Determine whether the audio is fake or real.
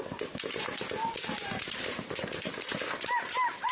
real